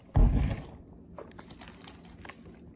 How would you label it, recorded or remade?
recorded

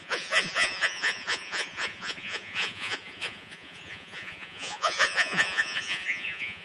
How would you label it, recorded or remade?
remade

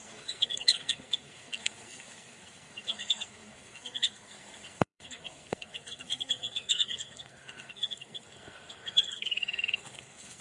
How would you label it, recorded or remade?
remade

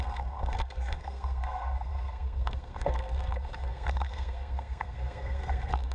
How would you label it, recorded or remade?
remade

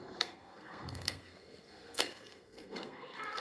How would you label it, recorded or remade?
remade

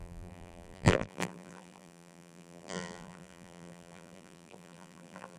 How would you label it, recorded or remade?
remade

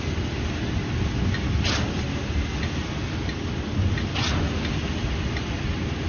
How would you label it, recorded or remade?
recorded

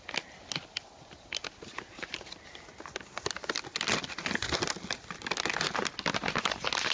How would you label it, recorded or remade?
recorded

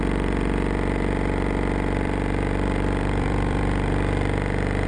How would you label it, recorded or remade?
remade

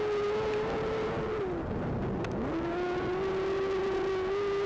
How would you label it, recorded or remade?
recorded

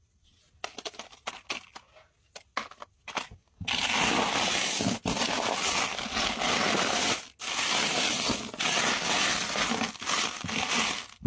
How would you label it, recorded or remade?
recorded